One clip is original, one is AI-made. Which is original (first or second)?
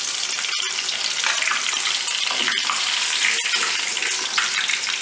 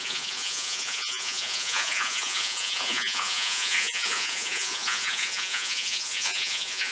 first